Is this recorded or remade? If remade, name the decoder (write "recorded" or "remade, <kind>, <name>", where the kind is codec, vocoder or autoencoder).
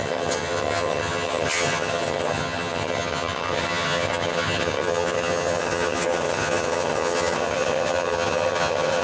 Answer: remade, vocoder, HiFi-GAN